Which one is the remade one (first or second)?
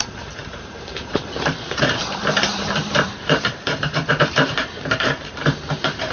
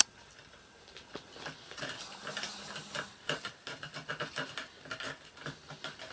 first